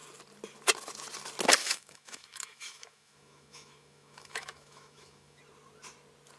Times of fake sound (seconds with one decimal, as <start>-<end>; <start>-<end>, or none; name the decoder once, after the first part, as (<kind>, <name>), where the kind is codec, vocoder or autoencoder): 1.6-5.4 (autoencoder, DAC-VAE)